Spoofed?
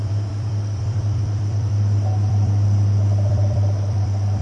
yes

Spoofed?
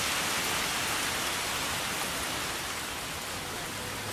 no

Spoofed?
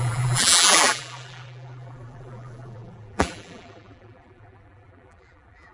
yes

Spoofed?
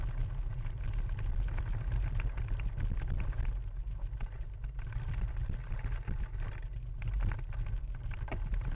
no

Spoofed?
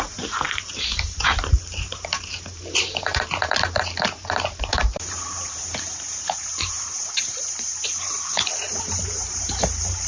yes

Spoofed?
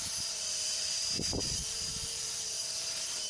yes